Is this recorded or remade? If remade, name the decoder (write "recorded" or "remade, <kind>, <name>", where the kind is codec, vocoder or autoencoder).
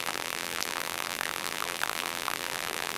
remade, vocoder, BigVGAN v2